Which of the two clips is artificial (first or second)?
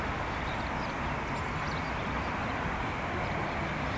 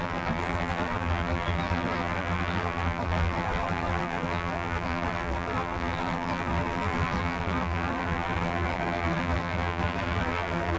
second